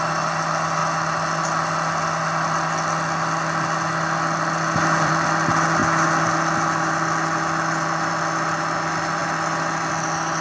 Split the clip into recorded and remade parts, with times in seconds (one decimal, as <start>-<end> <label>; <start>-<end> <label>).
0.0-10.4 recorded